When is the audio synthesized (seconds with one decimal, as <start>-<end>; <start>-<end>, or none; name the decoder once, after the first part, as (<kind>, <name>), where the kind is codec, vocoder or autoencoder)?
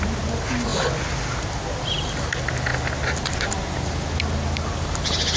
none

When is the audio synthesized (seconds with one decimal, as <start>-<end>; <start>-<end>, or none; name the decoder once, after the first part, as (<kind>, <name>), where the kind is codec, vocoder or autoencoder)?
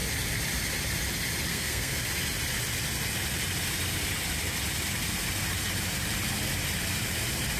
1.5-2.0 (codec, SNAC)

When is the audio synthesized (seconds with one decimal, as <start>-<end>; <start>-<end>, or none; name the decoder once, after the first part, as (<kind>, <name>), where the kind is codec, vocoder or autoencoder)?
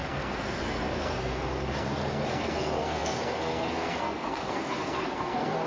0.0-5.7 (codec, SNAC)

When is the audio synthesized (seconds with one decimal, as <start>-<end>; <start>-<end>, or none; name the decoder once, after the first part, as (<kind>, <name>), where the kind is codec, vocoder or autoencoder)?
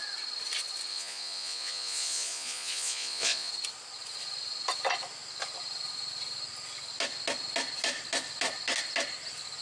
0.9-3.5 (vocoder, Vocos)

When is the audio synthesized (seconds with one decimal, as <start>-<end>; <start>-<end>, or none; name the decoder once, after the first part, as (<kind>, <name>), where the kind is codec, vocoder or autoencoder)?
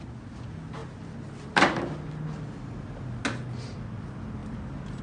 none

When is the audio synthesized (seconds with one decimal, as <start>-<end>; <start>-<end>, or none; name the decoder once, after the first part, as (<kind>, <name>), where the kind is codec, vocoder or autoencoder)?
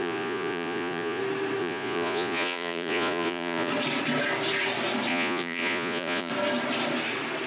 0.0-1.2 (vocoder, Vocos); 1.6-3.7; 5.1-6.3